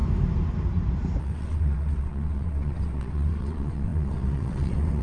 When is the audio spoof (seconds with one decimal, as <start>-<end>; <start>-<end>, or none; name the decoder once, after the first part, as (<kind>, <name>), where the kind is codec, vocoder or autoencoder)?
1.2-5.0 (vocoder, WaveNeXt)